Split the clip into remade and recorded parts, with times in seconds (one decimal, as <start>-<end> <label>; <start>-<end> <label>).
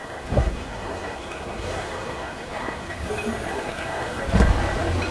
0.0-3.1 remade; 3.1-3.5 recorded; 3.5-4.2 remade; 4.2-5.1 recorded